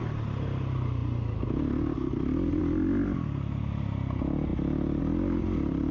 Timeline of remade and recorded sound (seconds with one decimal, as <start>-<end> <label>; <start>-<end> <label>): 0.0-5.9 recorded